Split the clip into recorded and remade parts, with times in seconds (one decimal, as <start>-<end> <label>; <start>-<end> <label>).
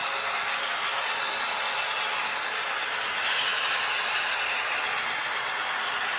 0.0-6.2 recorded